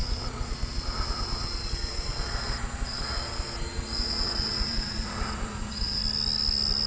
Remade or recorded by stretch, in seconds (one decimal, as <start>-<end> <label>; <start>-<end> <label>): 0.0-6.0 remade; 6.0-6.9 recorded

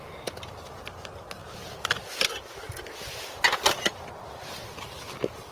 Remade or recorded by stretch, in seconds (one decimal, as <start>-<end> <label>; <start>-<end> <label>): 0.0-1.4 recorded; 1.4-2.1 remade; 2.1-5.5 recorded

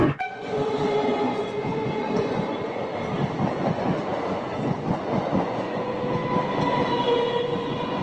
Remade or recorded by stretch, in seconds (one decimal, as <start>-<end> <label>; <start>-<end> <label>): 0.0-2.9 remade; 2.9-3.6 recorded; 3.6-6.2 remade; 6.2-6.9 recorded; 6.9-8.0 remade

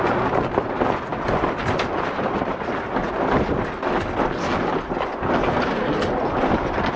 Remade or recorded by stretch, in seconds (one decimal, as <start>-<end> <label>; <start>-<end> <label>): 0.0-7.0 recorded

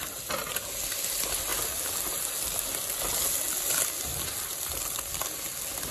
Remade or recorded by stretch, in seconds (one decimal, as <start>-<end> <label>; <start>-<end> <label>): 0.0-5.9 recorded